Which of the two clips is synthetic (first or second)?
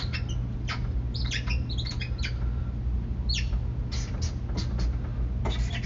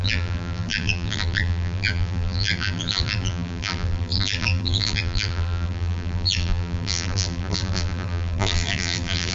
second